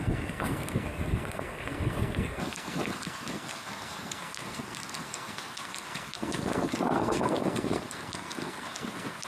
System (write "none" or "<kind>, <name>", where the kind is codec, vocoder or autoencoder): codec, SNAC